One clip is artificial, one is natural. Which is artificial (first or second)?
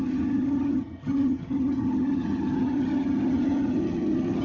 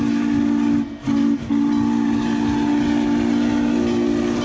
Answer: first